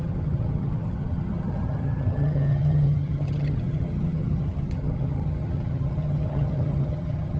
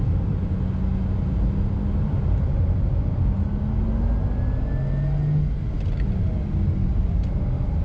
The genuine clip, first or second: second